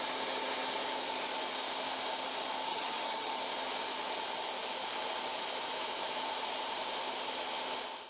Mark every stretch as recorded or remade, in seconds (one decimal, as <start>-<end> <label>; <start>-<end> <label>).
0.0-2.7 recorded; 2.7-3.4 remade; 3.4-8.1 recorded